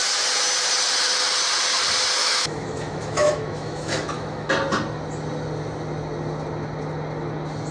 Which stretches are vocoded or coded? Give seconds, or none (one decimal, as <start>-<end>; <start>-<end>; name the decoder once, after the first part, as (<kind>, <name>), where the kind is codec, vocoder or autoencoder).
2.2-4.5 (autoencoder, DAC-VAE)